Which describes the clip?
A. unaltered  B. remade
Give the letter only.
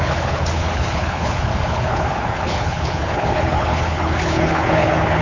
B